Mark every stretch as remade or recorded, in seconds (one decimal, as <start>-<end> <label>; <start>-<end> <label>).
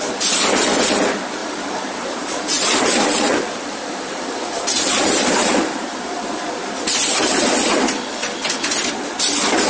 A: 0.0-1.4 recorded; 1.4-6.5 remade; 6.5-9.7 recorded